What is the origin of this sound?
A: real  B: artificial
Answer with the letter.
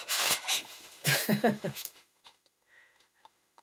B